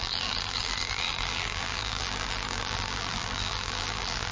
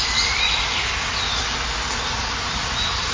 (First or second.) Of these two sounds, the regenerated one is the first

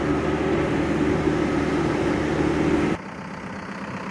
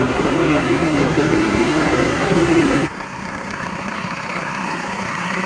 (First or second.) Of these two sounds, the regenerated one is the second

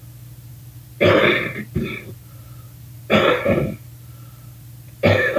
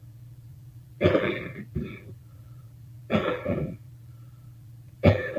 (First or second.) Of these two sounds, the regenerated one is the second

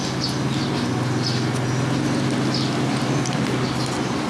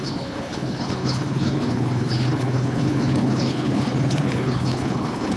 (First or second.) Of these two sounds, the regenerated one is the second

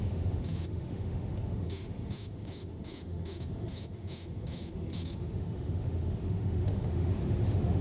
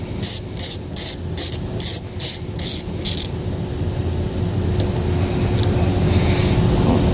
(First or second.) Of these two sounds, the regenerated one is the first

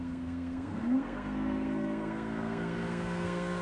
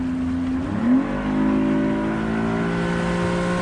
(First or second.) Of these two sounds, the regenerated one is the first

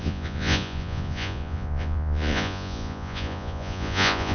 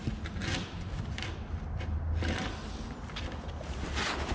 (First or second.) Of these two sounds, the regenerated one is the first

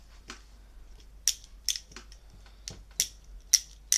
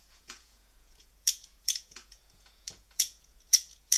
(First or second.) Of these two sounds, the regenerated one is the second